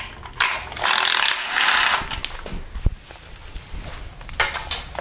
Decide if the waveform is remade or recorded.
recorded